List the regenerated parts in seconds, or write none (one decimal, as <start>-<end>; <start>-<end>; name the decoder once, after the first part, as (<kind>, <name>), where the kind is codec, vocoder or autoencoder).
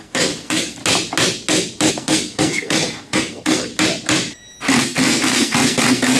0.0-0.8 (codec, SNAC); 1.9-3.7; 4.8-6.2